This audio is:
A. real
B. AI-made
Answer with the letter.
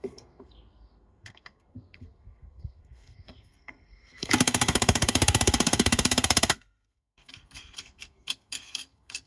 B